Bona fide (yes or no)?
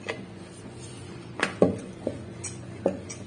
no